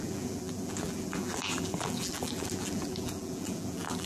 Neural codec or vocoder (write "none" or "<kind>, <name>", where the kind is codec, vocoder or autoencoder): vocoder, BigVGAN v2